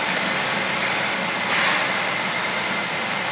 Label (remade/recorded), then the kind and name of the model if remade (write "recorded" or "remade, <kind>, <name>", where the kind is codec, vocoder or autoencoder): remade, vocoder, BigVGAN v2